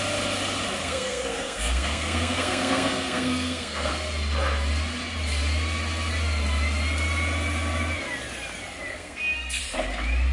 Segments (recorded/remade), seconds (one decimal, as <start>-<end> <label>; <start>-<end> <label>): 0.0-0.8 recorded; 0.8-3.9 remade; 3.9-8.9 recorded; 8.9-9.6 remade; 9.6-10.3 recorded